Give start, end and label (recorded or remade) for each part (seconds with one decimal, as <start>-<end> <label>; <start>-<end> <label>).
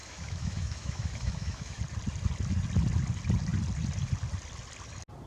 0.0-1.8 remade; 1.8-5.3 recorded